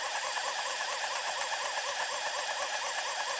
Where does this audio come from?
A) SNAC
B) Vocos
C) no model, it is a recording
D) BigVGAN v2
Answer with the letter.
C